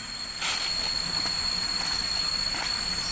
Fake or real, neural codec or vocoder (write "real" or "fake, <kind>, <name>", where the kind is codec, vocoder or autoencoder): real